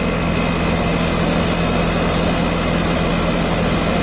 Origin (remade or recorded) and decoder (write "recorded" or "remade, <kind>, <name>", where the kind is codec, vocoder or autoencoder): recorded